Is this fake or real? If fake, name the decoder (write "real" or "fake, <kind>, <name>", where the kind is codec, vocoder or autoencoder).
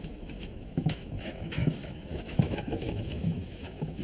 fake, autoencoder, DAC-VAE